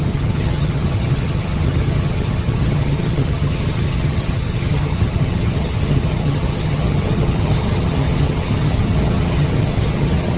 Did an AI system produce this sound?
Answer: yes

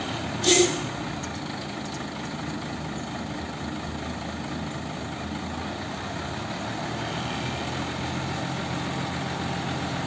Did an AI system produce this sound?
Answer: no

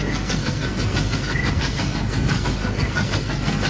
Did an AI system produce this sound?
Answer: yes